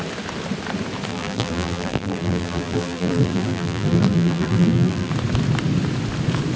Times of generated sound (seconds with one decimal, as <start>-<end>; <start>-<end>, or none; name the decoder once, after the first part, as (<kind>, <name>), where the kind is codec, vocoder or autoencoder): 1.1-5.1 (vocoder, BigVGAN v2)